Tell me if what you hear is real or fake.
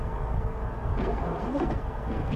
fake